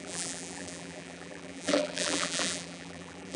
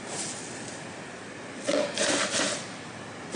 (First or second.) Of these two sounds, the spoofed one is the first